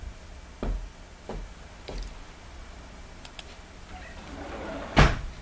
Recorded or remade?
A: recorded